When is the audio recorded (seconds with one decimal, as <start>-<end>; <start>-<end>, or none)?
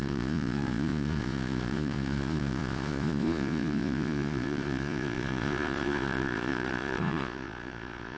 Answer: none